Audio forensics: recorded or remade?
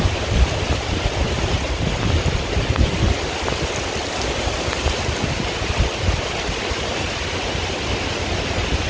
recorded